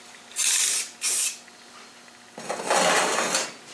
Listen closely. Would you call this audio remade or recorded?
recorded